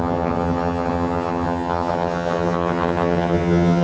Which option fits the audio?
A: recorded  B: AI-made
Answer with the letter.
B